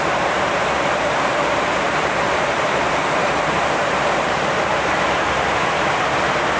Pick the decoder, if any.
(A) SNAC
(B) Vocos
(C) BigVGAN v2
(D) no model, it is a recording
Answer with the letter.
C